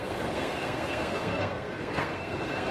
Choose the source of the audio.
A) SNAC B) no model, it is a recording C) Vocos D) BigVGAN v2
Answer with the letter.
A